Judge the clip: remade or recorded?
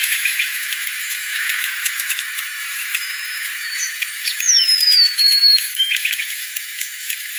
remade